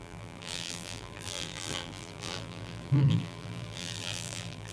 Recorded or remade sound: remade